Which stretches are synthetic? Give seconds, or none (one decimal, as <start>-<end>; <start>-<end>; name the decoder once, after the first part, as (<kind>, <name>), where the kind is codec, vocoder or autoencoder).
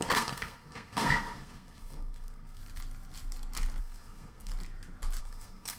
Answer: 0.0-2.6 (codec, SNAC); 3.8-4.5; 5.2-5.8